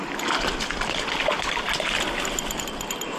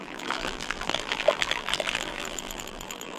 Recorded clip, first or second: first